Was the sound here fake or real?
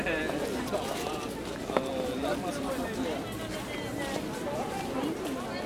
real